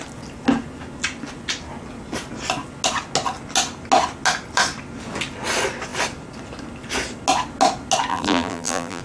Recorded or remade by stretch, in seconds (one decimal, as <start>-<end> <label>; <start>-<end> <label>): 0.0-8.1 recorded; 8.1-9.0 remade